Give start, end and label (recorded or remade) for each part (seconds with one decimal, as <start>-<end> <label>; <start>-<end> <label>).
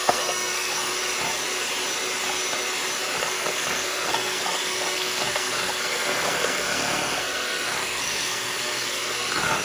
0.0-0.9 remade; 0.9-3.2 recorded; 3.2-9.6 remade